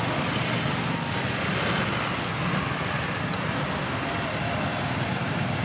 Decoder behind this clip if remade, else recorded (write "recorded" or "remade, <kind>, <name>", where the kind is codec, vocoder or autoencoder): recorded